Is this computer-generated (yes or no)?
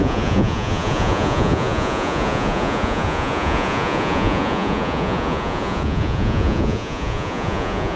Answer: yes